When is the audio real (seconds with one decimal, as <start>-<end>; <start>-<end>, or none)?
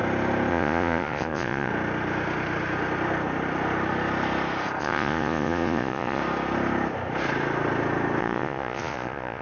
0.0-0.5; 1.7-4.8; 6.2-8.2